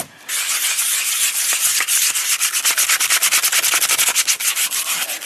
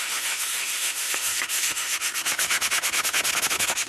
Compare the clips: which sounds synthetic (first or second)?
second